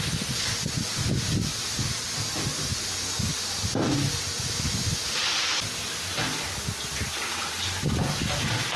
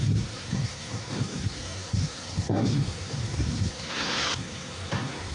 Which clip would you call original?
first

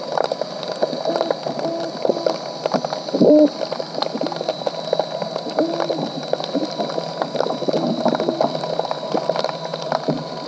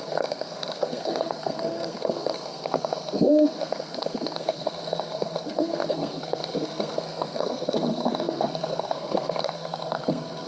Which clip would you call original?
first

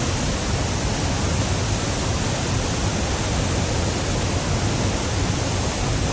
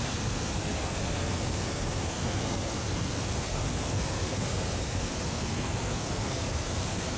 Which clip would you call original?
first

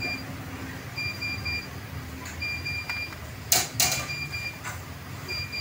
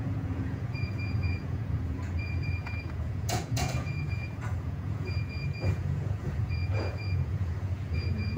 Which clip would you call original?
first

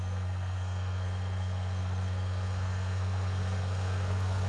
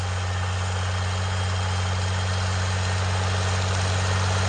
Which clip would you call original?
second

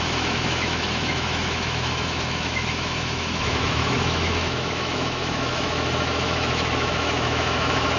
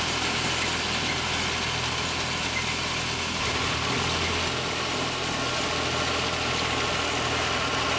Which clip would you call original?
second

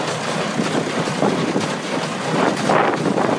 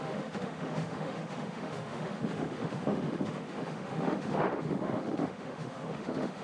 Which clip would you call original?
first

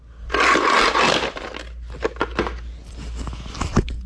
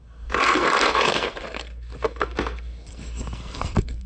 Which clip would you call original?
first